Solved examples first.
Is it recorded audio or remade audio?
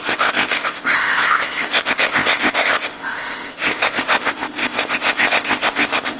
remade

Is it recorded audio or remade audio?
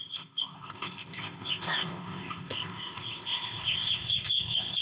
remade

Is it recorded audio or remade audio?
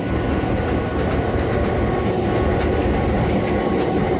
recorded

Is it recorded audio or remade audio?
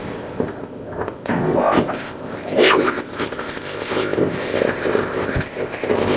remade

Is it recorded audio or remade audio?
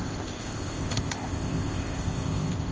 remade